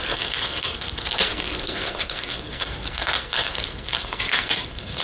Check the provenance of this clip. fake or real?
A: fake